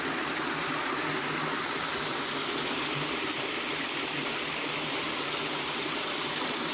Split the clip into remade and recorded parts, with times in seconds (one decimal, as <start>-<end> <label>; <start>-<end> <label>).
0.0-6.7 recorded